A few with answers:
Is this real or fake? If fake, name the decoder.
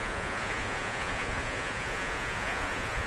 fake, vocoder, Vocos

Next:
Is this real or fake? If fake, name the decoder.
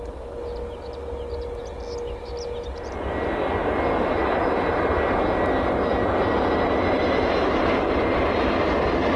real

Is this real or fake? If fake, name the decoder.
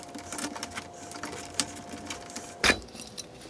real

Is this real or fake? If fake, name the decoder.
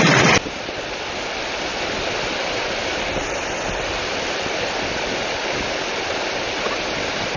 real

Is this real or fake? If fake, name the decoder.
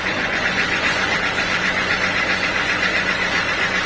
fake, vocoder, Vocos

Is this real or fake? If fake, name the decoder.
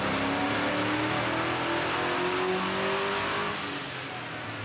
real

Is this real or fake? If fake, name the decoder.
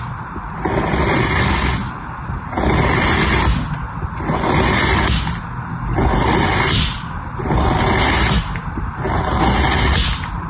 real